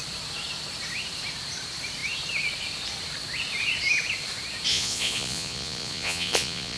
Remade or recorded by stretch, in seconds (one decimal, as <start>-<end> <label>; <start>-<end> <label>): 0.0-4.7 recorded; 4.7-6.8 remade